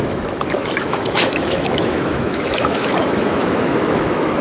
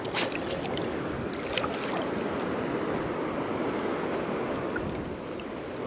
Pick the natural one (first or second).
second